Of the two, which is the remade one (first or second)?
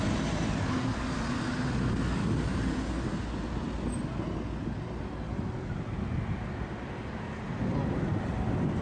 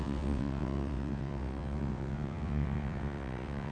second